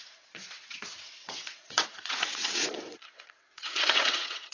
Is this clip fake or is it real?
fake